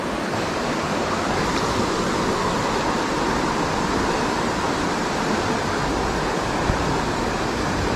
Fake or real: real